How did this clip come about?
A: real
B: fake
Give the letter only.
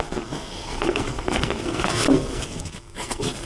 B